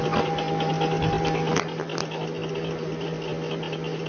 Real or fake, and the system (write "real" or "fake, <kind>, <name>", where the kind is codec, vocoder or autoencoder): real